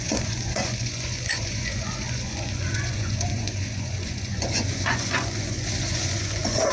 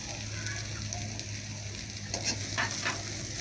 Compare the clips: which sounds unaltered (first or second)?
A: second